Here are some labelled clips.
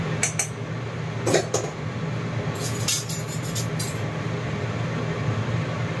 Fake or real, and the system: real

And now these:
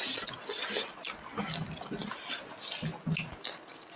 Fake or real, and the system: real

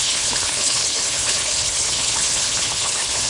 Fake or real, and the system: fake, codec, HILCodec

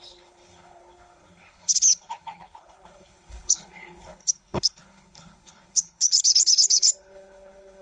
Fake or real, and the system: fake, codec, HILCodec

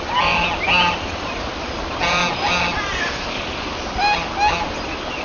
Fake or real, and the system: real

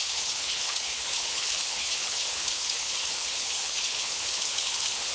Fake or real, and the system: fake, codec, HILCodec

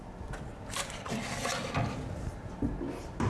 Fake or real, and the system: real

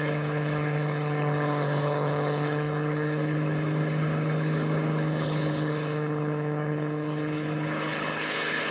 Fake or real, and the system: fake, codec, HILCodec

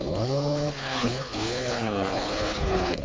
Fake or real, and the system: fake, codec, HILCodec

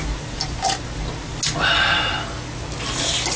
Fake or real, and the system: real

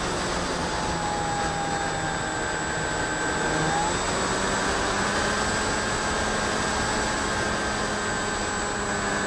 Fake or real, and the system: real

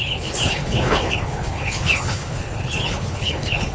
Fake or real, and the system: fake, codec, HILCodec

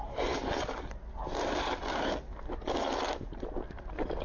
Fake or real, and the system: real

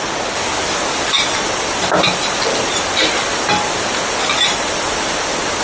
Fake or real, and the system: real